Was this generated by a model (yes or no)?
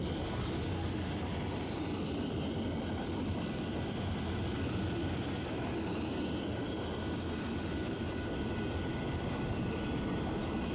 no